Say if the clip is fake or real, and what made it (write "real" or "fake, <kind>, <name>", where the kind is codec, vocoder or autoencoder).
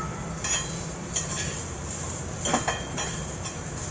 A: real